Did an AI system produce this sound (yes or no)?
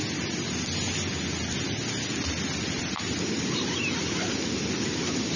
no